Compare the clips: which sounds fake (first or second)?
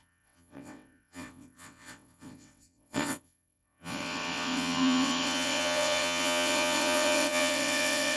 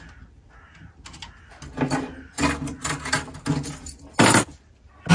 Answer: first